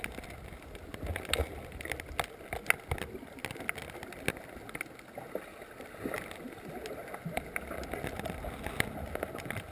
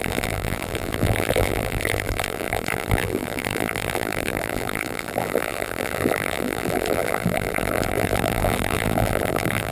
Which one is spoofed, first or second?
second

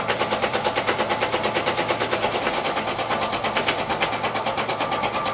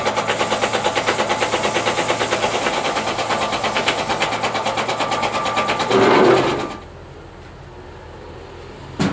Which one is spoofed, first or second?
first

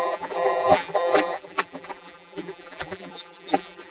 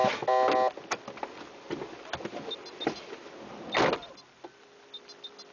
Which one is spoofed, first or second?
first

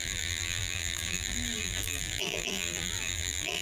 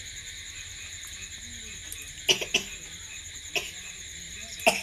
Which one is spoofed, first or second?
first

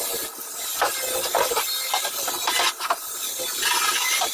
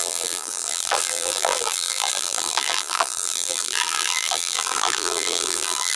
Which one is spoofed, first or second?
second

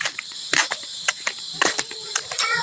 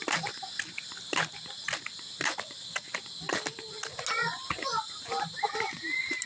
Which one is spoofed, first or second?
first